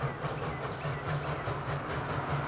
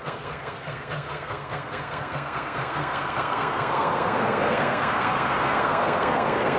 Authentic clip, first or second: first